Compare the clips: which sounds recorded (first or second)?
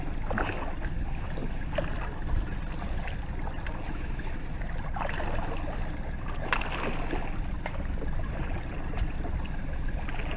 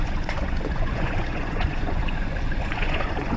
first